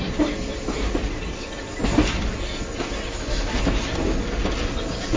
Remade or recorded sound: recorded